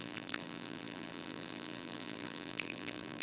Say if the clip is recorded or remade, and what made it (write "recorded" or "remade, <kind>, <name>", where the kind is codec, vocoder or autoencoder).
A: remade, vocoder, BigVGAN v2